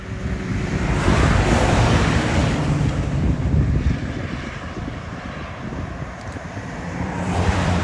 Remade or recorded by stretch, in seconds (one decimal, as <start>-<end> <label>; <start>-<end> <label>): 0.0-0.5 recorded; 0.5-1.8 remade; 1.8-2.4 recorded; 2.4-3.5 remade; 3.5-4.0 recorded; 4.0-7.8 remade